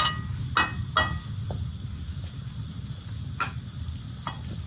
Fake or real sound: real